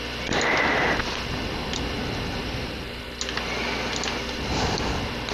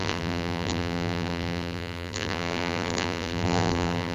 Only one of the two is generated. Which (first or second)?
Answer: second